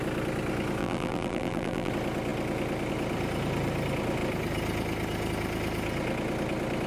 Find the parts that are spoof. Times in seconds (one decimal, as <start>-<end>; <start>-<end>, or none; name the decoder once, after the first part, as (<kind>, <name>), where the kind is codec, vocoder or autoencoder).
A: 0.8-1.9 (vocoder, BigVGAN v2)